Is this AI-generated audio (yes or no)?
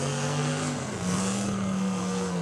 yes